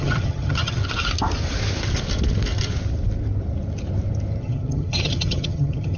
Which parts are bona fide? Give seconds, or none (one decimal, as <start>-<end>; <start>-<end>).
0.8-4.4

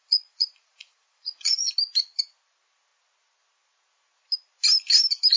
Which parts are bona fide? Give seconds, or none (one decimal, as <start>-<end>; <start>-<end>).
1.7-5.4

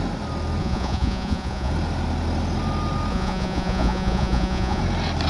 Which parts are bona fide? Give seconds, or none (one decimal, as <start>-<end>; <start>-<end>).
0.0-0.6; 1.7-3.1; 4.8-5.3

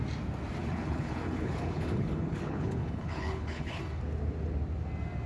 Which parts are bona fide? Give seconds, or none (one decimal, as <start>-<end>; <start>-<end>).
0.0-0.6; 3.8-5.3

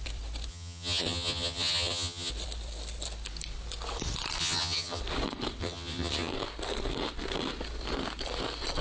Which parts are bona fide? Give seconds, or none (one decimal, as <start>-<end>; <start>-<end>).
0.0-0.5; 2.3-4.4; 5.0-5.6; 6.3-8.8